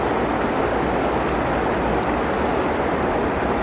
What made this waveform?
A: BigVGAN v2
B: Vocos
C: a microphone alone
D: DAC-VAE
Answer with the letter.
C